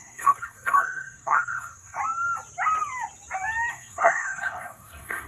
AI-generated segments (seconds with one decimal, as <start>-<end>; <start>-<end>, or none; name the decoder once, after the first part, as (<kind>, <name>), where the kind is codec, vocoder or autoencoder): 0.0-2.0 (codec, SNAC); 3.7-5.3